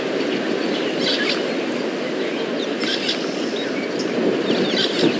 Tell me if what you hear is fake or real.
real